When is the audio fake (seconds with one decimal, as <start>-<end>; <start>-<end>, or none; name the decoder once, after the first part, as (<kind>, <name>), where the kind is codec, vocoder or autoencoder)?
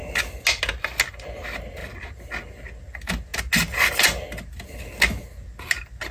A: none